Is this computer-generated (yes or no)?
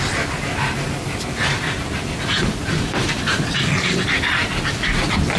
no